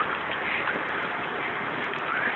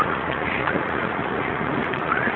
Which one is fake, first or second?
second